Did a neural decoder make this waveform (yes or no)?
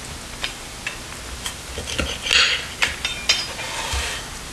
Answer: no